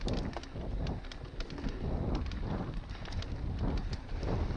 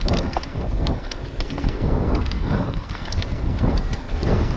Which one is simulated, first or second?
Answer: second